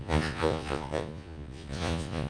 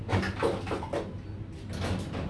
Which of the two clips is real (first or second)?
second